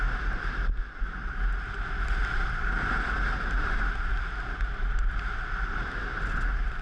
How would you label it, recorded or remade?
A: recorded